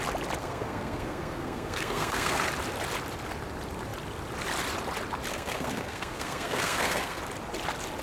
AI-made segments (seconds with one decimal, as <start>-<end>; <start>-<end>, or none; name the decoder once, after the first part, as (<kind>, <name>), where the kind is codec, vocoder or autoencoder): 0.4-2.4 (codec, SNAC); 5.3-7.2